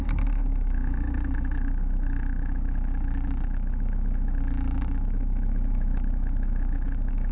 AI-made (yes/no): yes